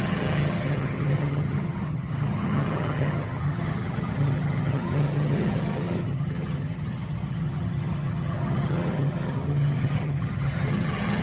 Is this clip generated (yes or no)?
yes